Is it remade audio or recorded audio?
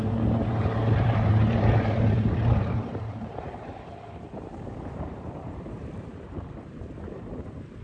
remade